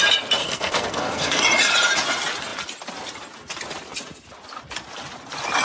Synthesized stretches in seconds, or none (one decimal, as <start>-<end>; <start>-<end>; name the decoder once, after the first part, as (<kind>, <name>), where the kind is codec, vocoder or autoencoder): 0.4-1.4 (codec, SNAC)